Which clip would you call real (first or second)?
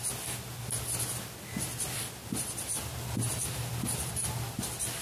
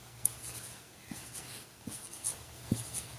first